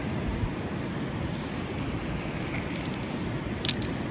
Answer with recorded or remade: recorded